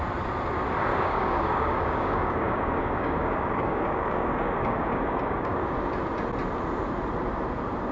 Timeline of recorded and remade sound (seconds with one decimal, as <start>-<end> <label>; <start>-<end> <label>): 0.0-0.9 recorded; 0.9-5.6 remade; 5.6-7.9 recorded